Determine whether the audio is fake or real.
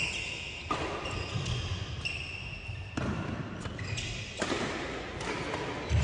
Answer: real